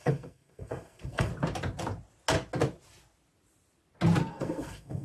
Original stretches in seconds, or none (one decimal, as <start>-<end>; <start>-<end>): 1.3-4.3